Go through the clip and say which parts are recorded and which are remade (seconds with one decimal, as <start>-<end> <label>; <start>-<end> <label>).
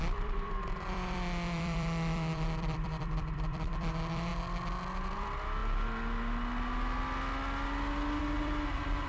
0.0-4.3 remade; 4.3-5.1 recorded; 5.1-5.6 remade; 5.6-8.2 recorded; 8.2-9.1 remade